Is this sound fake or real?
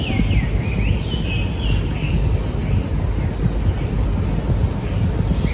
real